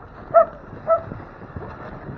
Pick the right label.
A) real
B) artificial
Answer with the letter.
A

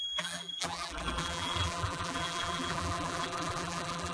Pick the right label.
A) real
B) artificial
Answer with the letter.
B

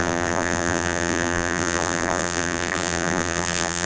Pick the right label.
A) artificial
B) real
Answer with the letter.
A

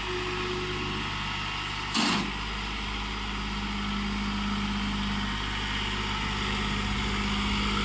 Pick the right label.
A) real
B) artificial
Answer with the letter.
A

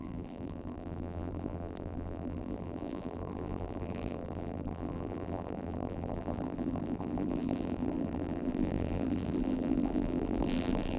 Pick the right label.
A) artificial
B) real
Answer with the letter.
A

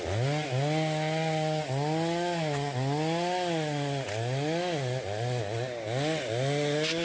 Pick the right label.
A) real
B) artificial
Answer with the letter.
A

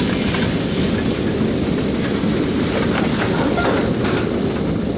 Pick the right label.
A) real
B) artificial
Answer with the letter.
A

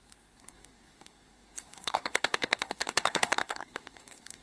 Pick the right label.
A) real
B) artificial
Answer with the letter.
B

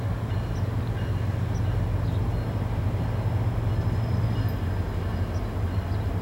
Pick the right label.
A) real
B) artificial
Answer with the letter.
A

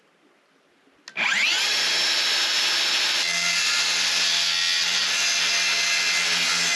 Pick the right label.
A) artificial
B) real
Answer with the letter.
B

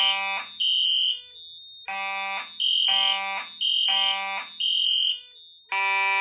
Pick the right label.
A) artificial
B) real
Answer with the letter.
B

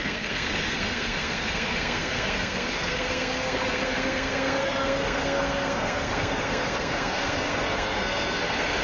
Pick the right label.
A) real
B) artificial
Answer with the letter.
B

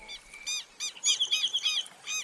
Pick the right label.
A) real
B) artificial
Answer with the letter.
A